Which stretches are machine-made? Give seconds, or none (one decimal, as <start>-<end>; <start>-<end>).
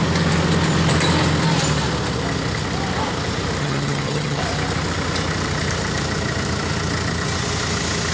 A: 3.6-4.4